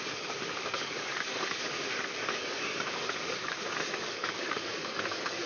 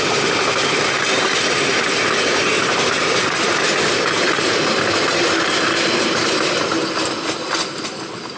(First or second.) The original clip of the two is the second